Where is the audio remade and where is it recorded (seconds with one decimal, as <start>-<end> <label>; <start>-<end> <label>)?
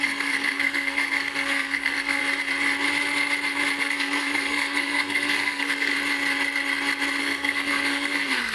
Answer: 0.0-2.2 remade; 2.2-3.8 recorded; 3.8-5.9 remade; 5.9-7.2 recorded; 7.2-8.5 remade